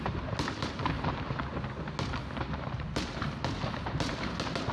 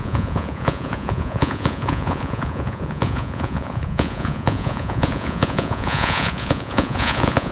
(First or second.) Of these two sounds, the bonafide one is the first